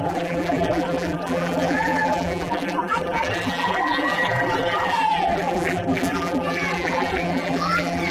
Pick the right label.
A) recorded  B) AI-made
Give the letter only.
B